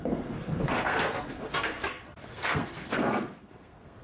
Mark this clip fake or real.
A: fake